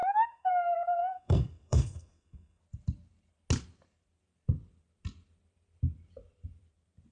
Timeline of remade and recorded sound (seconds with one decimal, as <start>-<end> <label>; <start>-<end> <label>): 0.0-0.5 remade; 0.5-1.0 recorded; 1.0-2.6 remade; 2.6-7.1 recorded